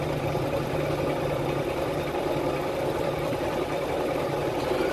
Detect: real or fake fake